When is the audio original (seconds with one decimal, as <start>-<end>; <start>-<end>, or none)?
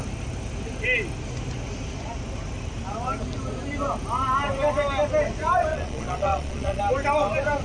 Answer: 0.0-5.7; 6.8-7.6